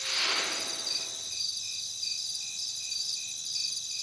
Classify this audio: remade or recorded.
recorded